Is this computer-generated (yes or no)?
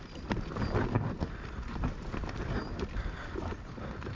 no